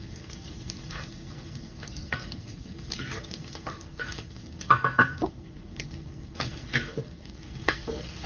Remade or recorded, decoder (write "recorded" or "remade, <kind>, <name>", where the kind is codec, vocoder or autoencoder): remade, codec, SNAC